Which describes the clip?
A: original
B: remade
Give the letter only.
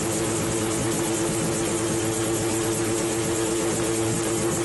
A